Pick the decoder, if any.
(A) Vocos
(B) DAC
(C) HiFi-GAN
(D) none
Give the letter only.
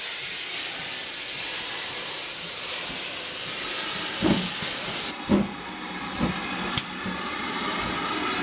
D